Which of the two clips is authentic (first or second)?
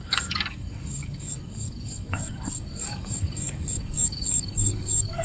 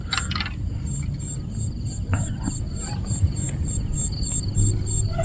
second